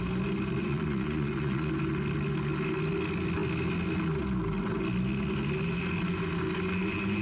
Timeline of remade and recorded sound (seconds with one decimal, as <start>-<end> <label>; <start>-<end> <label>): 0.0-0.6 recorded; 0.6-1.7 remade; 1.7-7.2 recorded